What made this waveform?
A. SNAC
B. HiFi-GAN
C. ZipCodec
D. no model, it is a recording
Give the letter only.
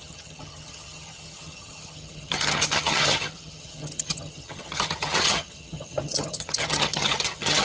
B